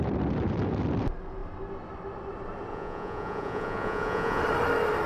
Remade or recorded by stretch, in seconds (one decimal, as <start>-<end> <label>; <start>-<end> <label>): 0.0-2.7 recorded; 2.7-4.4 remade; 4.4-5.1 recorded